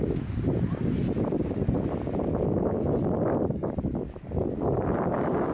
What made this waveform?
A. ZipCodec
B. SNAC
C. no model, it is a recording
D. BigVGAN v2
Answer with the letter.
C